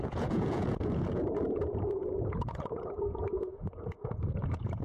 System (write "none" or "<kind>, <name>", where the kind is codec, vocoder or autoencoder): vocoder, Vocos